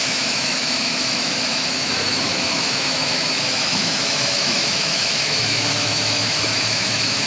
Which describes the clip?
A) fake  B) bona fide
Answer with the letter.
A